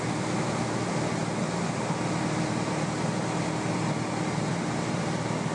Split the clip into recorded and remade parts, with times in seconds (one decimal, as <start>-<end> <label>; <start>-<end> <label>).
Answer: 0.0-5.5 recorded